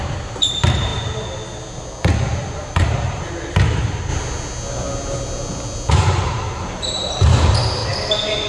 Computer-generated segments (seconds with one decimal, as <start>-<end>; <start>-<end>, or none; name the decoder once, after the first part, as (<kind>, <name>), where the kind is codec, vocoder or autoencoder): 0.0-0.9 (vocoder, BigVGAN v2); 2.4-4.1; 5.9-7.8